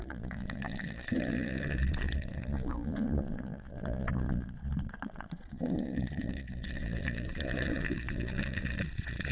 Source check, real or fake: fake